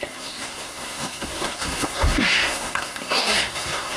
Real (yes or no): no